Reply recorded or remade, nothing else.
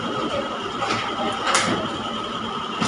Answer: remade